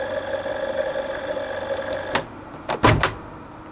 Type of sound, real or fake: real